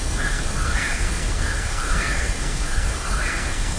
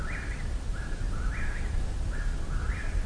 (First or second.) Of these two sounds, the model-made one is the first